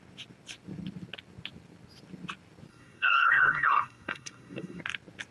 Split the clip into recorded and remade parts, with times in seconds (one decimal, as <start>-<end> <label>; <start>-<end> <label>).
0.0-2.7 recorded; 2.7-4.8 remade; 4.8-5.3 recorded